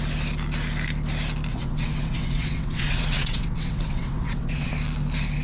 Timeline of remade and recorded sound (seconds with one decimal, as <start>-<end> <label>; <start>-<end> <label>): 0.0-1.5 recorded; 1.5-4.7 remade; 4.7-5.4 recorded